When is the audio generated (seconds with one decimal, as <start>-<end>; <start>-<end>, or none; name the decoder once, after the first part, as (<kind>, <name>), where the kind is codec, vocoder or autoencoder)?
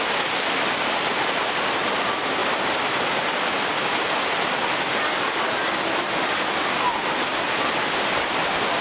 none